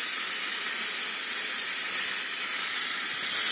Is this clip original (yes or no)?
yes